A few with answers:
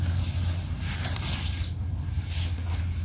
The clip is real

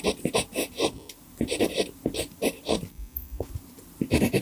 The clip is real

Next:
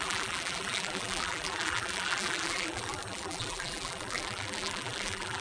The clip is fake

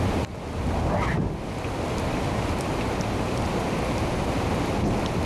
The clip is real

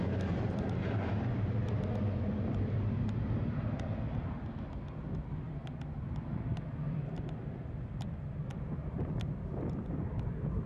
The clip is real